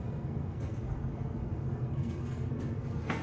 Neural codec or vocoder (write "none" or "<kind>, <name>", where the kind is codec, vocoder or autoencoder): codec, SNAC